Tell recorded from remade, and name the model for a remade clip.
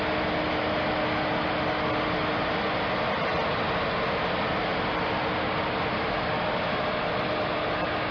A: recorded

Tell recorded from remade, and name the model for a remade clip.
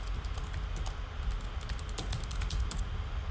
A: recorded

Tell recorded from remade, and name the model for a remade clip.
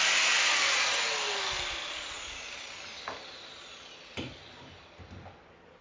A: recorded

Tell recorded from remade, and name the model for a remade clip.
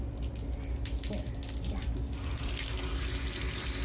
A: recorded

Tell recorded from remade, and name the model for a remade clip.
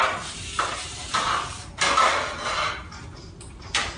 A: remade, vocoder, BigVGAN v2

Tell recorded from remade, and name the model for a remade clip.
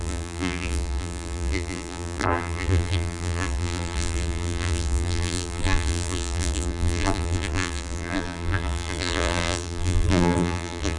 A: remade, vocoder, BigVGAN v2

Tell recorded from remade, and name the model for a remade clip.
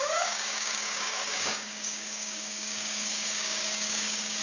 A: remade, codec, DAC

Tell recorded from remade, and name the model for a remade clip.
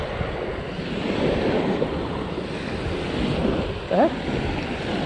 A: recorded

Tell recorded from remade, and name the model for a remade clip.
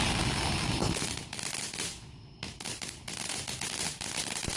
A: recorded